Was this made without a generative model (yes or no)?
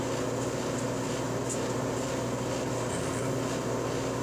yes